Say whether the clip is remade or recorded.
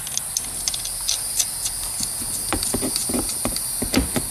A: recorded